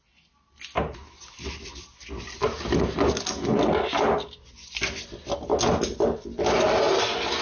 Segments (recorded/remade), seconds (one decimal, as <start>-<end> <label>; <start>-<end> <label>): 0.0-7.4 recorded